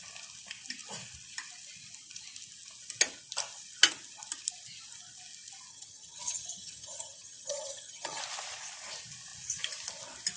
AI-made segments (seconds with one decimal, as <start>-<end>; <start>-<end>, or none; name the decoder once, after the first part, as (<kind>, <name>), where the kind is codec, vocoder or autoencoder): 5.7-8.2 (vocoder, HiFi-GAN)